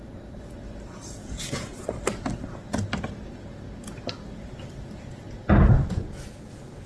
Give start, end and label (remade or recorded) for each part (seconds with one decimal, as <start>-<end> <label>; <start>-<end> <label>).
0.0-1.2 recorded; 1.2-1.9 remade; 1.9-5.7 recorded; 5.7-6.9 remade